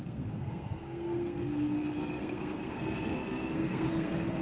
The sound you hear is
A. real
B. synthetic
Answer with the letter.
B